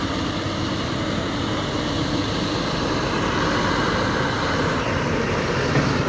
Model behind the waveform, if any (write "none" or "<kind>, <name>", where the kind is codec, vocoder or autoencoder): none